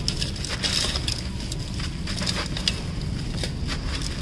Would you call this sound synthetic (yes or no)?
no